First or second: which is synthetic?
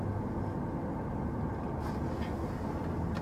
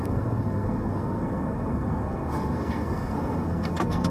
second